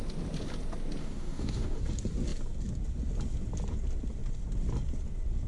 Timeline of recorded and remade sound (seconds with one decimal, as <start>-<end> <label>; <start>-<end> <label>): 0.0-1.0 recorded; 1.0-1.8 remade; 1.8-5.5 recorded